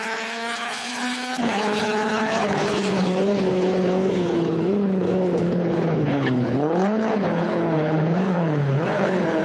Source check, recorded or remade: remade